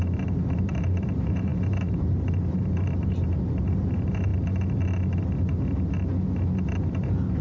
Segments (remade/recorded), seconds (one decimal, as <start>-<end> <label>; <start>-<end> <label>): 0.0-4.3 remade; 4.3-6.9 recorded; 6.9-7.4 remade

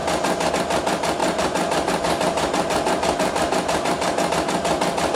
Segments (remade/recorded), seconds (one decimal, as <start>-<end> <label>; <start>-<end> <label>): 0.0-1.2 recorded; 1.2-4.3 remade; 4.3-5.2 recorded

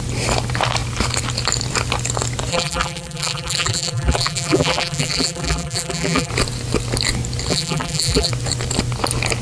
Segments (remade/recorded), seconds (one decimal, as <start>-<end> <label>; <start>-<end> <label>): 0.0-2.5 recorded; 2.5-6.3 remade; 6.3-7.5 recorded; 7.5-8.3 remade; 8.3-9.4 recorded

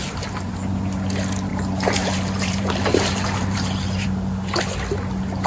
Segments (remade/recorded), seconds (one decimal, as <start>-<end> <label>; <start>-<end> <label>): 0.0-1.5 recorded; 1.5-4.6 remade; 4.6-5.5 recorded

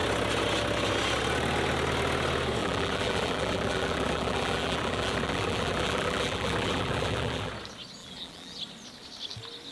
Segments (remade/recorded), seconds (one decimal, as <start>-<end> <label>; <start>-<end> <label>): 0.0-2.6 recorded; 2.6-7.5 remade; 7.5-8.0 recorded; 8.0-8.6 remade; 8.6-9.7 recorded